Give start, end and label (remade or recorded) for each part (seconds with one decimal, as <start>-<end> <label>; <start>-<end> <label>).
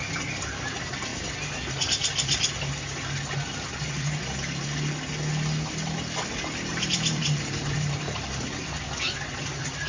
0.0-6.7 recorded; 6.7-8.4 remade; 8.4-9.9 recorded